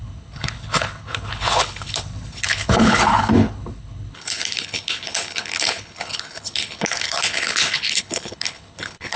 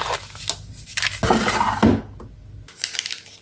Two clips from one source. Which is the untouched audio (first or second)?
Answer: second